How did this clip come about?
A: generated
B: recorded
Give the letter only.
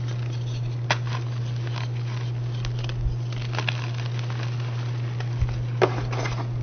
B